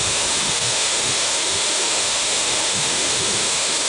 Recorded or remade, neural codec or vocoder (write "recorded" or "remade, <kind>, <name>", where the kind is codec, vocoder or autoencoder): remade, autoencoder, DAC-VAE